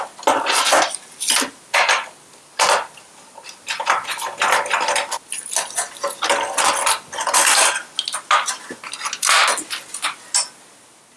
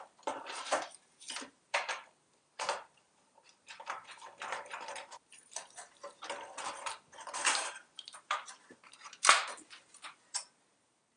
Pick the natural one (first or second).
first